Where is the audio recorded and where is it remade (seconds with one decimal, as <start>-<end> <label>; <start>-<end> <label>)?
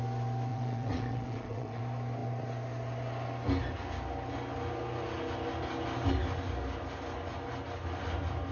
0.0-0.5 recorded; 0.5-1.8 remade; 1.8-8.5 recorded